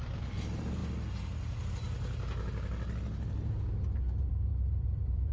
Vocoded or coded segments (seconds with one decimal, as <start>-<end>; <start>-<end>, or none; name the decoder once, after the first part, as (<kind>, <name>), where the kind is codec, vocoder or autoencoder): 4.5-5.3 (vocoder, BigVGAN v2)